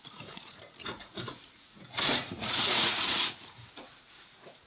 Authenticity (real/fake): fake